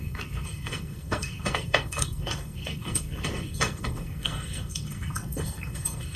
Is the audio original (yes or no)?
no